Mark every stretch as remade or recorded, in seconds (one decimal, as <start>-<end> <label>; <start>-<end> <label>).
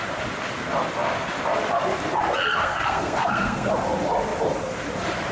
0.0-2.6 recorded; 2.6-3.7 remade; 3.7-5.3 recorded